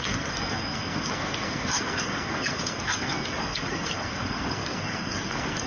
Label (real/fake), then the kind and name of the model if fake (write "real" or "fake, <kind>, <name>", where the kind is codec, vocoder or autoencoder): fake, codec, SNAC